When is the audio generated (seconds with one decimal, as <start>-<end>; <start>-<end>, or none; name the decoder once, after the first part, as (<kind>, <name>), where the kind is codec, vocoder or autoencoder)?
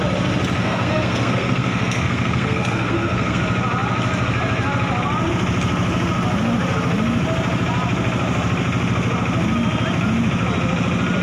0.6-3.4 (codec, SNAC)